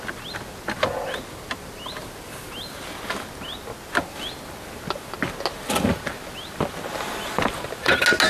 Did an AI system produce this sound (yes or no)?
no